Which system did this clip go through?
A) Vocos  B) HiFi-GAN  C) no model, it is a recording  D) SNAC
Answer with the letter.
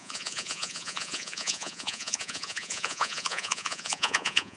A